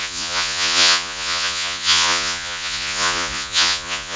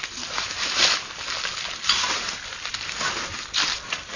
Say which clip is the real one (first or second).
second